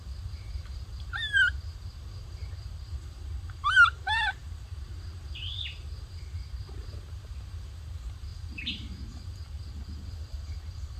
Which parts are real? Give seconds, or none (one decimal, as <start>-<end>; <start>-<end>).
none